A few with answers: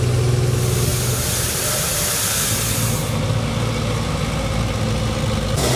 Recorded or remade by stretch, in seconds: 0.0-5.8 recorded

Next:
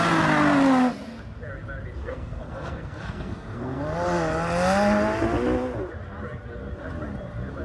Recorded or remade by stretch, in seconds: 0.0-2.0 recorded; 2.0-3.8 remade; 3.8-7.6 recorded

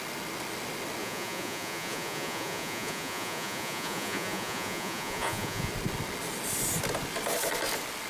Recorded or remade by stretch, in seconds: 0.0-1.0 recorded; 1.0-5.7 remade; 5.7-8.1 recorded

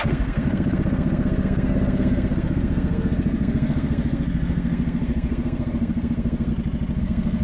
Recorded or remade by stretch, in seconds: 0.0-6.5 remade; 6.5-7.0 recorded; 7.0-7.4 remade

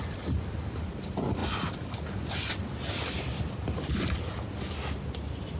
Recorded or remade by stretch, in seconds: 0.0-5.6 recorded

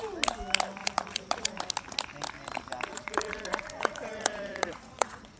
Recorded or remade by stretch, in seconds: 0.0-0.8 recorded; 0.8-1.6 remade; 1.6-2.9 recorded; 2.9-5.4 remade

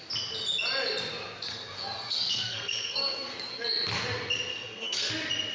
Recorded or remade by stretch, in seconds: 0.0-1.5 recorded; 1.5-3.5 remade; 3.5-4.5 recorded; 4.5-5.1 remade; 5.1-5.5 recorded

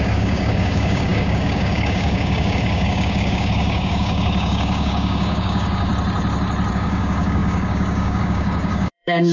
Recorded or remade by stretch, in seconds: 0.0-5.9 remade; 5.9-6.7 recorded; 6.7-9.3 remade